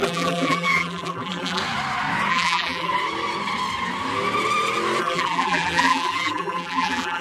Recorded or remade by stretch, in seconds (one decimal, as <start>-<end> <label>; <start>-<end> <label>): 0.0-1.6 remade; 1.6-2.3 recorded; 2.3-2.9 remade; 2.9-5.0 recorded; 5.0-7.2 remade